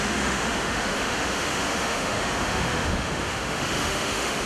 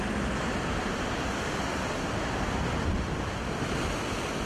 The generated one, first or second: first